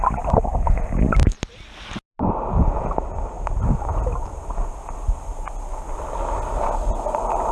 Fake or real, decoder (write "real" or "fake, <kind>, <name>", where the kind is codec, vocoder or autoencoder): real